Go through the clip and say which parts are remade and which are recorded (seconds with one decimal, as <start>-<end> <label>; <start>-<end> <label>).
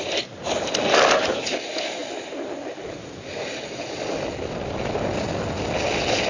0.0-6.3 recorded